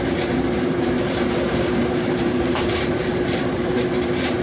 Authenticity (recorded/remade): remade